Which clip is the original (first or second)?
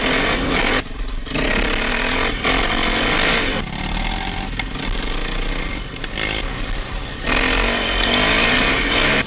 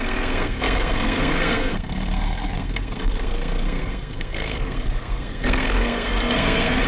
first